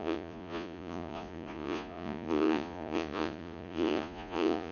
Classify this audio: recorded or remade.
remade